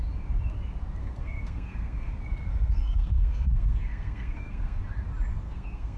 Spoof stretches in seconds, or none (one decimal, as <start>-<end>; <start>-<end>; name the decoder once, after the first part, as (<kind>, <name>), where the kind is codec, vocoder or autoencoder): 1.0-2.1 (codec, SNAC); 2.5-4.8; 5.3-6.0